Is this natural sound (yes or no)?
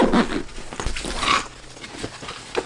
yes